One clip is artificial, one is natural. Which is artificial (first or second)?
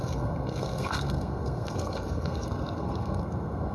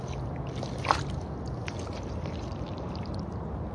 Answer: first